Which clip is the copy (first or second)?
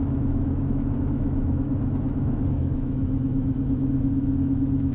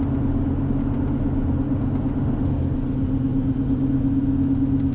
first